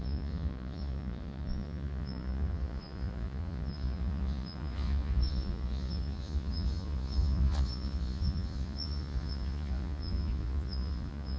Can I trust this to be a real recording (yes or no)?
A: no